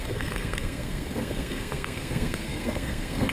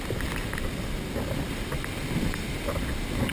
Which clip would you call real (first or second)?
second